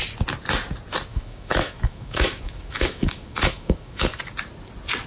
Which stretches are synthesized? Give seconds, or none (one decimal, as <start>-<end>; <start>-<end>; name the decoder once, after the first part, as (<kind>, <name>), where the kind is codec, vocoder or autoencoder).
1.1-4.2 (autoencoder, DAC-VAE)